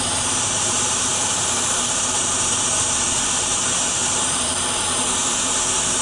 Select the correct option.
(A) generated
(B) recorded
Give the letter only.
A